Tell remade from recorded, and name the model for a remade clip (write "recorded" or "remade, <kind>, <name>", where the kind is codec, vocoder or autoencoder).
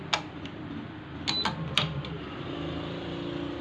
recorded